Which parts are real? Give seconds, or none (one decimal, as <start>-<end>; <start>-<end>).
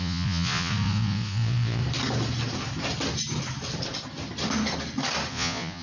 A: 1.8-5.3